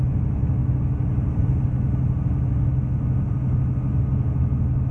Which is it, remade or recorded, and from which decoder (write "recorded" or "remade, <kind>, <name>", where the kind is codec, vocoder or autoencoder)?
recorded